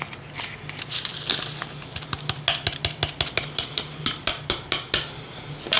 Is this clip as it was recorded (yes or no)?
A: yes